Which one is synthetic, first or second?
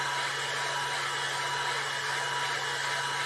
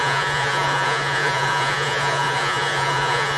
second